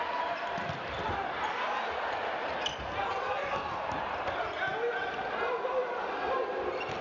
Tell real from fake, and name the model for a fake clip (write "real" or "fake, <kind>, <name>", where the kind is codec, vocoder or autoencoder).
real